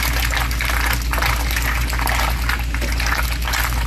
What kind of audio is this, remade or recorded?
recorded